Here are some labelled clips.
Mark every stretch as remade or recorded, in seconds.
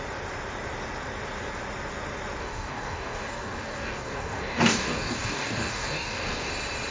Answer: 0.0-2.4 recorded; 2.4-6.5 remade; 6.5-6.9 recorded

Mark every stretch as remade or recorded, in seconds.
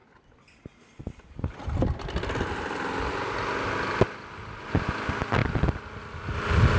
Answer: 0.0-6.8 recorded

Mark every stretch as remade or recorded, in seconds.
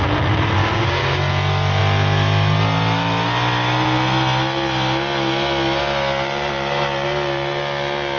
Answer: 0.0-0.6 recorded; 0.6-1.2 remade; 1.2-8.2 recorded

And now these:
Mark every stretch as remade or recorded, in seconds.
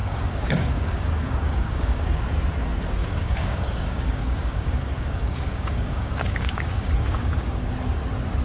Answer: 0.0-2.2 remade; 2.2-3.0 recorded; 3.0-7.7 remade; 7.7-8.4 recorded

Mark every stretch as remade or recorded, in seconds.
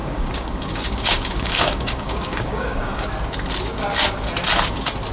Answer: 0.0-3.1 remade; 3.1-5.1 recorded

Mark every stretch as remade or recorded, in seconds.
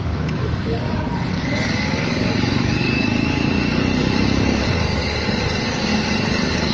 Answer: 0.0-6.7 remade